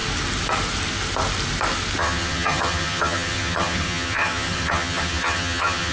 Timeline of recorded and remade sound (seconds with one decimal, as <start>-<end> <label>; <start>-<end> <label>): 0.0-2.0 recorded; 2.0-5.9 remade